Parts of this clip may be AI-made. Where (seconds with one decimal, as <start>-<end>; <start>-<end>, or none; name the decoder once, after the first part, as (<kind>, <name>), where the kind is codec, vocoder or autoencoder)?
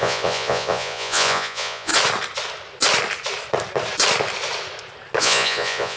0.0-1.9 (vocoder, Vocos); 5.2-6.0